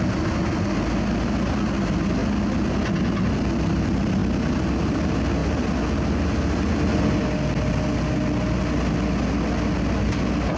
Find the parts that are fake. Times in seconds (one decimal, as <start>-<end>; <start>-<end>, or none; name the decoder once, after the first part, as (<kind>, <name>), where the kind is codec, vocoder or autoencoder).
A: none